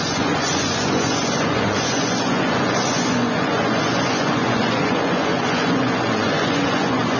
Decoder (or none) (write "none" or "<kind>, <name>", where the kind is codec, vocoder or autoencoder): vocoder, Vocos